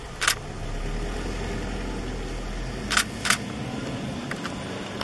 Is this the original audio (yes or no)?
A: yes